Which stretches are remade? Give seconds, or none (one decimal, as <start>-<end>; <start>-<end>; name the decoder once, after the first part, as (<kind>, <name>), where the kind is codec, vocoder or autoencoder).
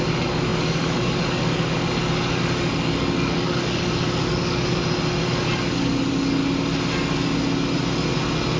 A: 0.0-4.8 (codec, DAC); 5.6-6.4